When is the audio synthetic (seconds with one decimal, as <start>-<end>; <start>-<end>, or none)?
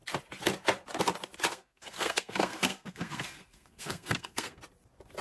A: 1.5-4.6